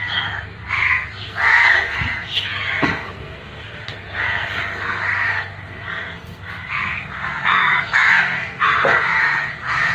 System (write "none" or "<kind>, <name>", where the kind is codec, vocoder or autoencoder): codec, SNAC